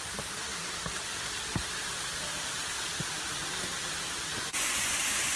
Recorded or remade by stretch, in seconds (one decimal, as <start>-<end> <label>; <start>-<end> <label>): 0.0-4.3 recorded; 4.3-5.4 remade